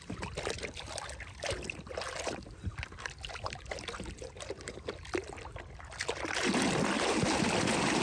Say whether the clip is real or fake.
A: real